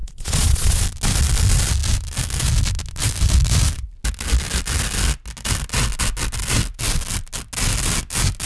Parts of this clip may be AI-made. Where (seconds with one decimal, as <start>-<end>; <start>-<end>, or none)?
0.0-0.8